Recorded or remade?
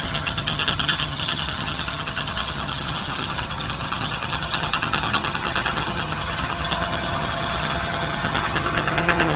remade